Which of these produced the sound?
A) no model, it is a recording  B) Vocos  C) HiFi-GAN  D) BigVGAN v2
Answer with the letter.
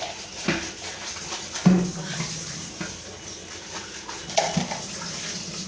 A